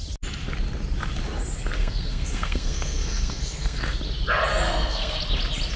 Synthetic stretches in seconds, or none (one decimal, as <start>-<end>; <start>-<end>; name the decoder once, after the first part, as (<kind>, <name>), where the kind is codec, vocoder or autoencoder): 1.8-4.0 (codec, SNAC); 4.5-5.2